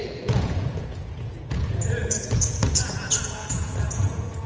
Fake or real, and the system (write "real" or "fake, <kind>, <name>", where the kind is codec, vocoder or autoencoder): fake, vocoder, Vocos